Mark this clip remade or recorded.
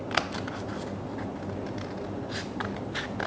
recorded